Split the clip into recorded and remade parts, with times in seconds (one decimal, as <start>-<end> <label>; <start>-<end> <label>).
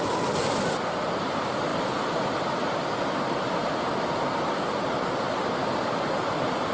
0.0-6.7 recorded